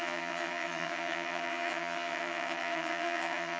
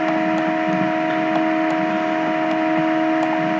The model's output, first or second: first